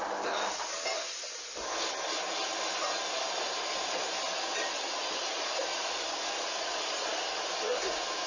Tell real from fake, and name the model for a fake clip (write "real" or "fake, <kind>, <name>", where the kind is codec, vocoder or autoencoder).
real